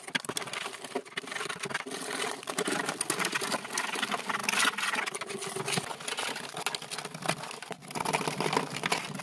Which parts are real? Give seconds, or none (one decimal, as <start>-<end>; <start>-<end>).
0.0-9.2